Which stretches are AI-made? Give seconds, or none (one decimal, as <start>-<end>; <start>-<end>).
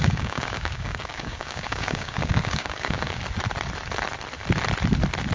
0.0-3.2